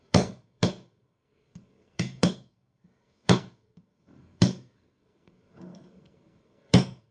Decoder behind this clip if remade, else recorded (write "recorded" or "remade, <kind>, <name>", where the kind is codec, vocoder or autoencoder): remade, codec, SNAC